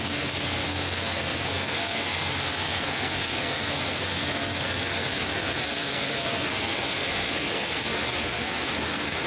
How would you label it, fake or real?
fake